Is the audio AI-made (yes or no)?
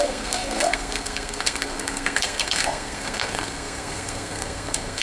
yes